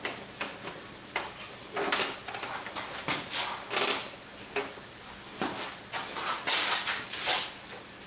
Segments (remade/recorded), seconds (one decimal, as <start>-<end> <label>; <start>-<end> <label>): 0.0-8.1 recorded